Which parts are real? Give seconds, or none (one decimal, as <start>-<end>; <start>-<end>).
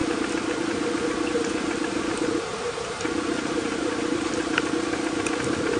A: 2.0-2.5; 4.6-5.8